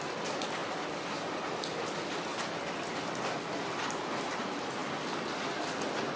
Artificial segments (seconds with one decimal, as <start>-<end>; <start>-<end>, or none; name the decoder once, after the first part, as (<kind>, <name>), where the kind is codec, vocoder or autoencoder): none